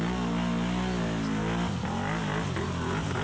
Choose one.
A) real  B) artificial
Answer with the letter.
A